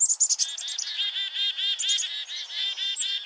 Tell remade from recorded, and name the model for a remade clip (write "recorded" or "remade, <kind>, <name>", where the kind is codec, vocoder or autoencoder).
recorded